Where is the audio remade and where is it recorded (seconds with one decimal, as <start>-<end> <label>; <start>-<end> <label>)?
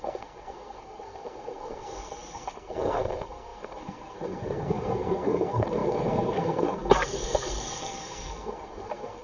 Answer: 0.0-9.2 remade